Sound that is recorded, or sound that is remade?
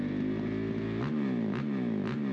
recorded